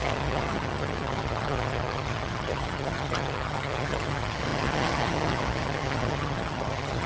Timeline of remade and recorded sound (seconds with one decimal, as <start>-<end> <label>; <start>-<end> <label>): 0.0-7.1 remade